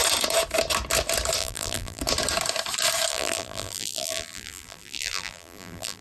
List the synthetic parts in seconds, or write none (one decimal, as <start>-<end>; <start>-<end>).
1.4-2.0; 3.1-6.0